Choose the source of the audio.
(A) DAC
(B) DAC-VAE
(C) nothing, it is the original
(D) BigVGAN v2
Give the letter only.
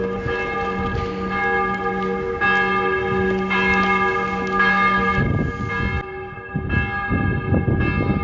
C